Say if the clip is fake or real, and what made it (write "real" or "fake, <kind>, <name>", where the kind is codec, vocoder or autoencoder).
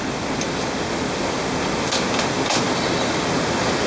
real